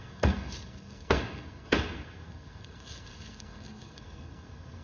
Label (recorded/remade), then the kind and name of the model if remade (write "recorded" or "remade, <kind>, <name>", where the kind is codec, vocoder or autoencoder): remade, codec, SNAC